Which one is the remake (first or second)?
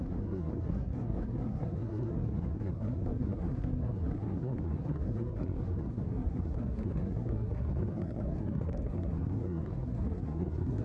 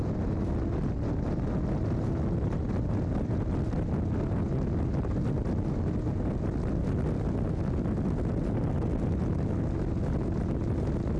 first